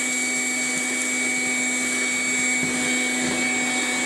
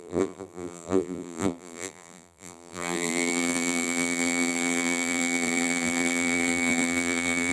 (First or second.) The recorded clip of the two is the first